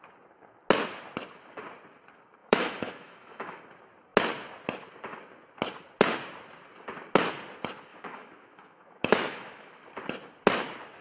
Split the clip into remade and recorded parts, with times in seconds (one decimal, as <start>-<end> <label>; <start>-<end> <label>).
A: 0.0-2.4 recorded; 2.4-3.6 remade; 3.6-7.9 recorded; 7.9-9.8 remade; 9.8-11.0 recorded